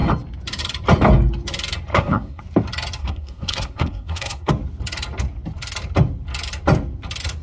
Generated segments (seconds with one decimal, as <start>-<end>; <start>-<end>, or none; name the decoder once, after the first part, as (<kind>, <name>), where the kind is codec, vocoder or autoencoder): 1.9-2.4 (codec, SNAC); 3.0-4.5